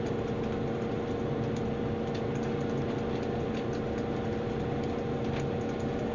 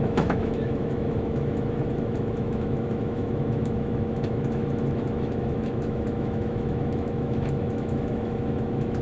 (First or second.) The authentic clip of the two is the first